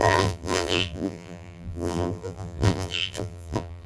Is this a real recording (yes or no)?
no